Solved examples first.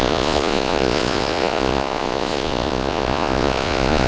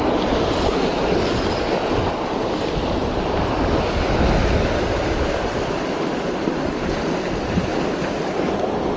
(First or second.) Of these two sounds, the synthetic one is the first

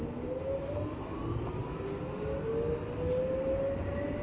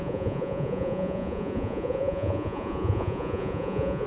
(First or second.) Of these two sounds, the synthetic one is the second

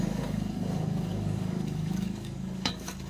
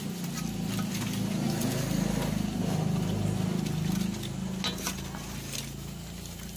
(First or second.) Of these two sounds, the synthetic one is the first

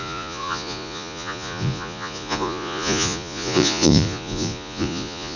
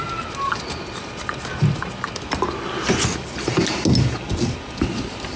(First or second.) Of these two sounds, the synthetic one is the first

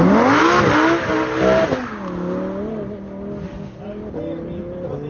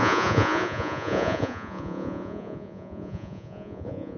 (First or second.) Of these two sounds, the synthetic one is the second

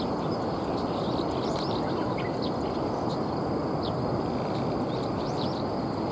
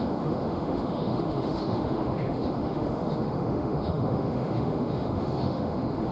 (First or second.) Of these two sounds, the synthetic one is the second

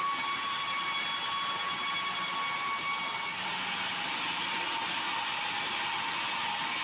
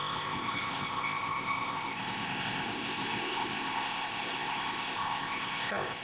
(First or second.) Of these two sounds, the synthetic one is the second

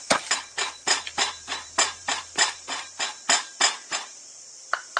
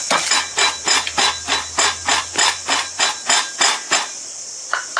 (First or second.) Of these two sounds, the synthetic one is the first